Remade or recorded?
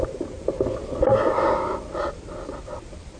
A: recorded